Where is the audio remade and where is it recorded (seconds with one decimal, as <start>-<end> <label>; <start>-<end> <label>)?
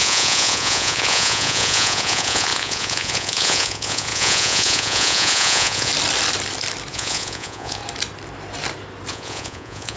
0.0-5.9 remade; 5.9-6.9 recorded; 6.9-7.8 remade; 7.8-9.1 recorded; 9.1-10.0 remade